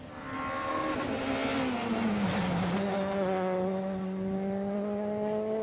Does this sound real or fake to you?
real